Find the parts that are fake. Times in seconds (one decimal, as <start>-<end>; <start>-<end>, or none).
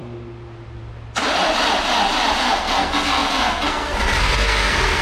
2.4-5.0